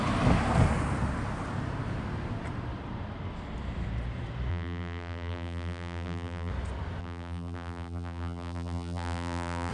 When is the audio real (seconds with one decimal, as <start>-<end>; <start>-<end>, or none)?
0.0-4.5; 6.5-7.0